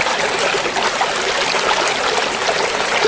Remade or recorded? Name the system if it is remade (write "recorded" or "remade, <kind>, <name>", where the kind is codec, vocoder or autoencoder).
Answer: recorded